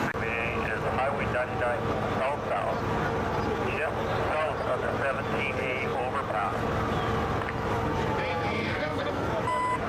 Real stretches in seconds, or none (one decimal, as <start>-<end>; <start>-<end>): 0.0-8.3; 9.4-9.9